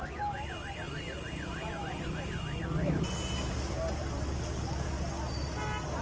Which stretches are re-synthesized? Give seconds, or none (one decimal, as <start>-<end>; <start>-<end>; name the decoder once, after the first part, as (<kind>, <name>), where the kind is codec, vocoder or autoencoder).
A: none